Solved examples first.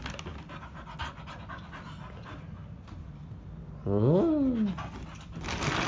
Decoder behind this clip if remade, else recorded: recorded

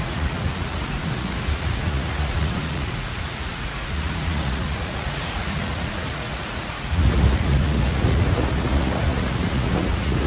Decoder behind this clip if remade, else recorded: remade, vocoder, Vocos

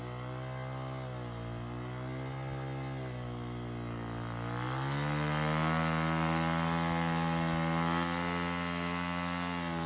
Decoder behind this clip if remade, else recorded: recorded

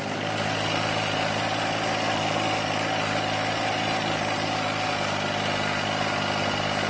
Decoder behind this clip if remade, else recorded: recorded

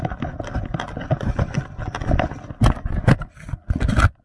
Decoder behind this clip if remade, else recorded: recorded